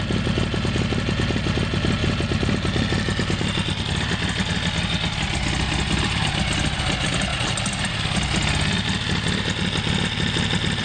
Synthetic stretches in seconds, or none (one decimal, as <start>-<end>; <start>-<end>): none